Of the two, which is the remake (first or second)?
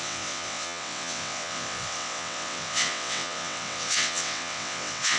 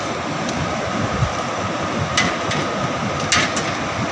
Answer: first